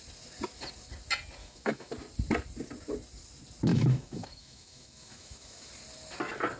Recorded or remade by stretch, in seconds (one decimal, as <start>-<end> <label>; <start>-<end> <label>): 0.0-1.4 recorded; 1.4-1.9 remade; 1.9-3.7 recorded; 3.7-5.7 remade; 5.7-6.6 recorded

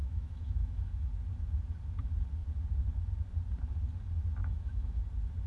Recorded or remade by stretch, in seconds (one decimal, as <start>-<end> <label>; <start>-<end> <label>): 0.0-1.1 remade; 1.1-4.4 recorded; 4.4-5.0 remade; 5.0-5.5 recorded

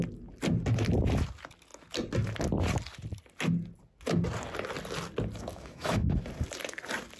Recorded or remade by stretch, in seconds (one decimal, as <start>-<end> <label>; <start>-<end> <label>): 0.0-5.5 recorded; 5.5-6.2 remade; 6.2-7.2 recorded

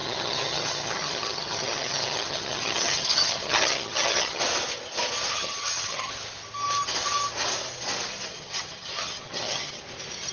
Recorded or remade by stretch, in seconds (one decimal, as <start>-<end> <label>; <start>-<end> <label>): 0.0-4.4 remade; 4.4-5.3 recorded; 5.3-6.1 remade; 6.1-8.3 recorded; 8.3-9.8 remade; 9.8-10.3 recorded

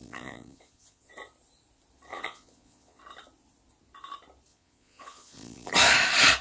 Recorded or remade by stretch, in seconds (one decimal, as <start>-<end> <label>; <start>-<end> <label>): 0.0-1.1 remade; 1.1-2.1 recorded; 2.1-3.0 remade; 3.0-4.5 recorded; 4.5-5.7 remade; 5.7-6.4 recorded

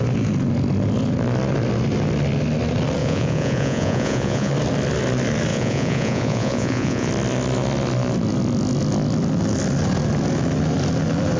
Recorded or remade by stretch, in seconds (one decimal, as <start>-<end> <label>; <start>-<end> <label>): 0.0-3.0 recorded; 3.0-4.5 remade; 4.5-5.5 recorded; 5.5-7.1 remade; 7.1-11.4 recorded

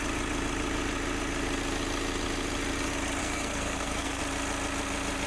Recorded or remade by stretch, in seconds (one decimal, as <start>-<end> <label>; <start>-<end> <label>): 0.0-3.2 recorded; 3.2-4.2 remade; 4.2-5.3 recorded

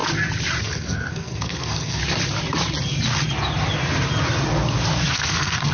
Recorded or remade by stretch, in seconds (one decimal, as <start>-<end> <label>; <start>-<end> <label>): 0.0-0.6 recorded; 0.6-2.0 remade; 2.0-5.1 recorded; 5.1-5.7 remade